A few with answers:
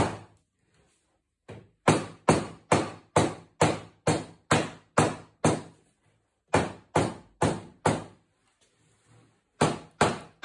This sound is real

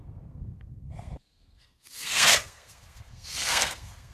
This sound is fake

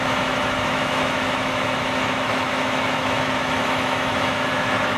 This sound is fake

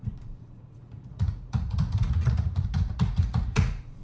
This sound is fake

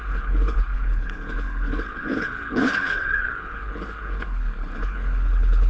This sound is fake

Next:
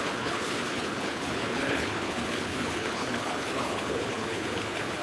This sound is fake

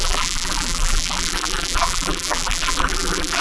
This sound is fake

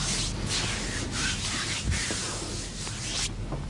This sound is real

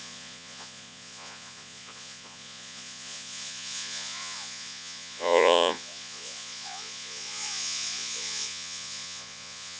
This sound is fake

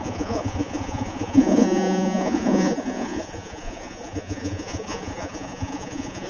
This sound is fake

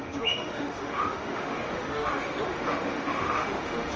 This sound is fake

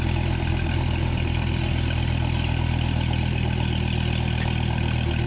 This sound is real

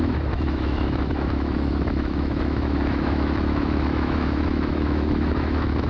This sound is fake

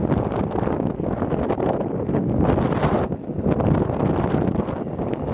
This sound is real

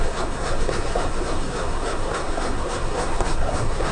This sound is fake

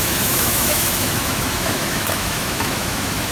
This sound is fake